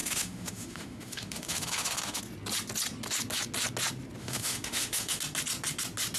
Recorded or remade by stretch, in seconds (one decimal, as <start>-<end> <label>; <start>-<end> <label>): 0.0-2.2 remade; 2.2-4.2 recorded; 4.2-5.2 remade; 5.2-6.2 recorded

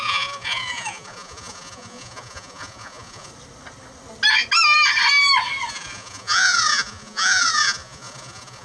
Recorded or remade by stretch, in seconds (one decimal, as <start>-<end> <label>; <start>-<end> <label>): 0.0-3.3 remade; 3.3-5.7 recorded; 5.7-8.6 remade

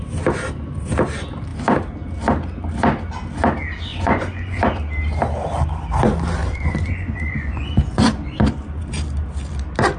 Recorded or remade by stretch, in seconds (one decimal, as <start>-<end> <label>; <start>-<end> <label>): 0.0-3.9 recorded; 3.9-4.6 remade; 4.6-6.4 recorded; 6.4-8.8 remade; 8.8-10.0 recorded

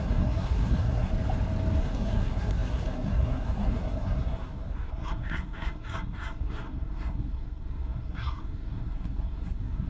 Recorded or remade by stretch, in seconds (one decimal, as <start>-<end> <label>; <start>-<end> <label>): 0.0-1.1 remade; 1.1-1.8 recorded; 1.8-9.9 remade

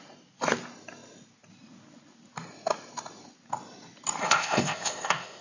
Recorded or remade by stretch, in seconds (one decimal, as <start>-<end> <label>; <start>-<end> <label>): 0.0-4.2 recorded; 4.2-5.4 remade